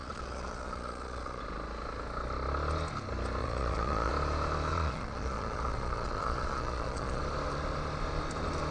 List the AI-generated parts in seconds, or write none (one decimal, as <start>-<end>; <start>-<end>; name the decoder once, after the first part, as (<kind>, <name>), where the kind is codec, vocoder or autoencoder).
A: 0.0-1.4 (vocoder, Vocos); 3.4-4.1; 4.7-7.2